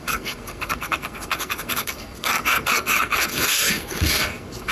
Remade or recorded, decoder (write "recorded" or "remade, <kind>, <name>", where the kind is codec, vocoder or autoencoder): remade, codec, SNAC